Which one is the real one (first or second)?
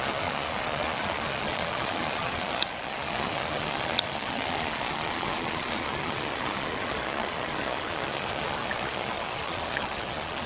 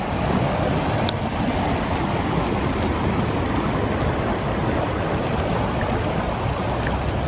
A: second